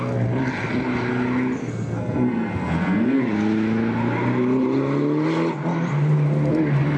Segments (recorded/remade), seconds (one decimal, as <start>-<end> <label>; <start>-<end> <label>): 0.0-1.6 recorded; 1.6-3.2 remade; 3.2-7.0 recorded